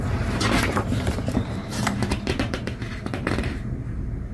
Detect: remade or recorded remade